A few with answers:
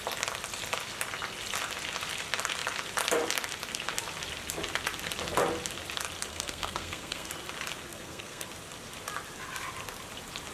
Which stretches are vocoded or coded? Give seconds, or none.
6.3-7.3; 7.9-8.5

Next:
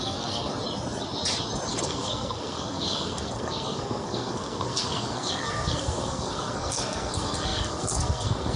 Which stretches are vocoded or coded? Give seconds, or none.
0.0-0.5; 1.7-8.6

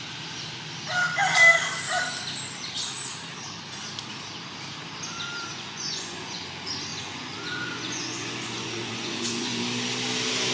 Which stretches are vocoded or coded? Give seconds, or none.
5.5-6.4; 6.9-9.6

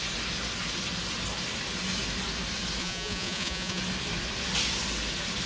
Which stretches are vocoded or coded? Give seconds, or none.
2.8-3.8